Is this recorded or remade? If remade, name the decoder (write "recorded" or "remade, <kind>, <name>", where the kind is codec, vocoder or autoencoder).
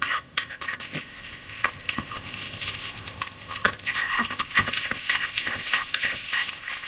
remade, codec, ZipCodec